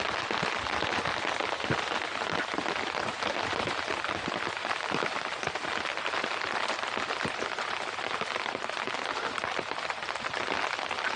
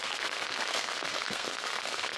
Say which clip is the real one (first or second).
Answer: first